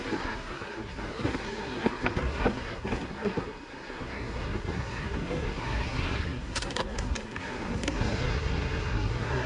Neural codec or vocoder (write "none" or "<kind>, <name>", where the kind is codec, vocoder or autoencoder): codec, SNAC